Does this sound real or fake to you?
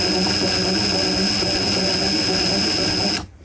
real